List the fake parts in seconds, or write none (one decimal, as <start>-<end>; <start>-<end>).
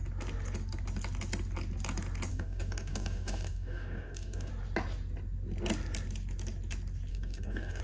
2.3-4.5; 7.1-7.8